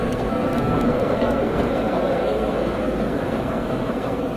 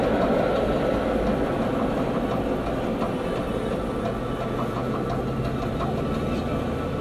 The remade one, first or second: first